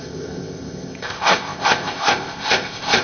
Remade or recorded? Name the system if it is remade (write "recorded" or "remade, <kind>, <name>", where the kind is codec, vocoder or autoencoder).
remade, codec, ZipCodec